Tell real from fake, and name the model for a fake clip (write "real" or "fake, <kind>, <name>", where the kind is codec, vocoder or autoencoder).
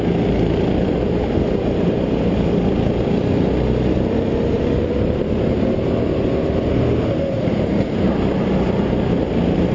real